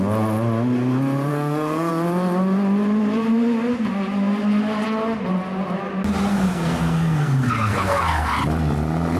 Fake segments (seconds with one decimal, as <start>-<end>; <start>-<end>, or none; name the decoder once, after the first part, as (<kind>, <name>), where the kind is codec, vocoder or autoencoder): 1.3-1.9 (codec, SNAC); 6.3-8.4